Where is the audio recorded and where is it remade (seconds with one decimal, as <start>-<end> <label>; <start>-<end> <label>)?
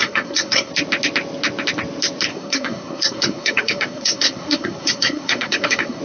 0.0-0.7 remade; 0.7-2.3 recorded; 2.3-6.0 remade